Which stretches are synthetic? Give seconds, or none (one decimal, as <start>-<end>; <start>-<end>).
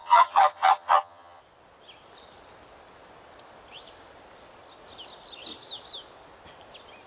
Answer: 0.0-1.4